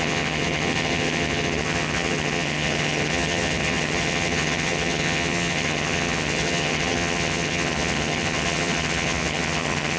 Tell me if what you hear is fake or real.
fake